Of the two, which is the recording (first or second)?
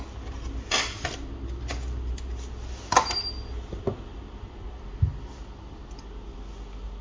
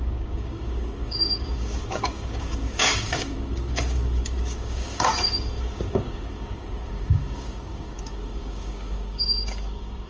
first